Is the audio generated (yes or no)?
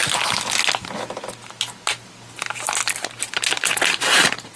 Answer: no